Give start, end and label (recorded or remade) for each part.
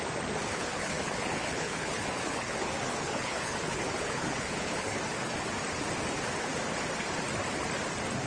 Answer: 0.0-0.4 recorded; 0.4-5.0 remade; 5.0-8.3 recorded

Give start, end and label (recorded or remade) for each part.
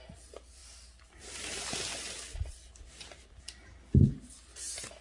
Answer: 0.0-5.0 recorded